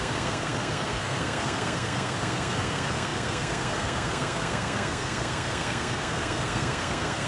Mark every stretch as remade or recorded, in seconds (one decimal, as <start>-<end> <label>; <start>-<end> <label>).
0.0-7.3 remade